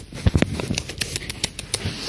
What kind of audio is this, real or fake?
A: real